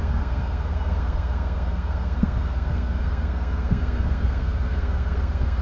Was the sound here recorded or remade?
remade